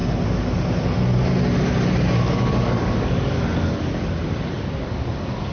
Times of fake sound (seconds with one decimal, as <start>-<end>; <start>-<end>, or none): 2.2-5.5